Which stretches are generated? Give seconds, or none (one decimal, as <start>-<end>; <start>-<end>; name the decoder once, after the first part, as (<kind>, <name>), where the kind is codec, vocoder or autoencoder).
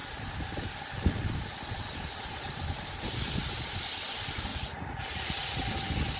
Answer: 4.5-5.7 (vocoder, Vocos)